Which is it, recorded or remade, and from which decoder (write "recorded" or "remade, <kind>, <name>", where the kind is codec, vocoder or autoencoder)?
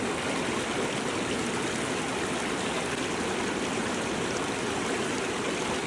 recorded